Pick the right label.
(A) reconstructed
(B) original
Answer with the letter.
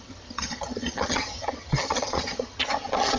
A